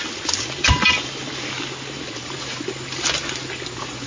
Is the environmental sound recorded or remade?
recorded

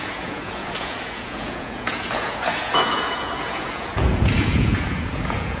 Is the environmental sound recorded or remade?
remade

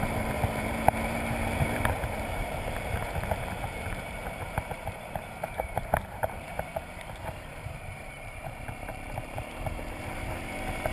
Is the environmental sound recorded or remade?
remade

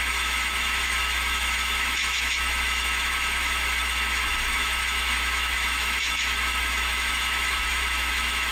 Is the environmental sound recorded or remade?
remade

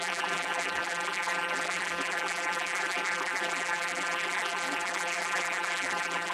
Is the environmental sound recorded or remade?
remade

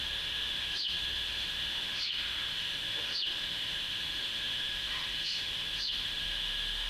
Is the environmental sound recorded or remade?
remade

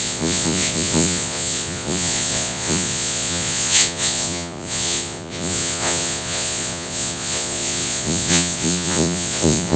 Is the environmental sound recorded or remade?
remade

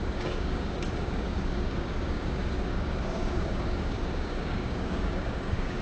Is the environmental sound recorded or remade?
remade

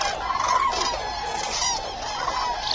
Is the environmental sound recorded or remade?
recorded